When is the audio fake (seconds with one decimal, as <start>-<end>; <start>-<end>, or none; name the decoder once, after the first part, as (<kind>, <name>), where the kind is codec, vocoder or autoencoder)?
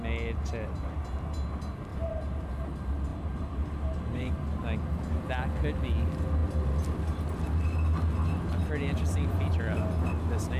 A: 1.9-2.5 (vocoder, BigVGAN v2); 3.1-4.3